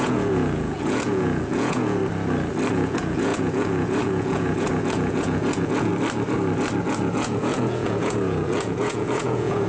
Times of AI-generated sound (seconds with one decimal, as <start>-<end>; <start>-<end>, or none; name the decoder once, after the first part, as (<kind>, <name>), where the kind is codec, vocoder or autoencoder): 0.0-2.0 (vocoder, Vocos); 2.7-5.9; 6.8-9.7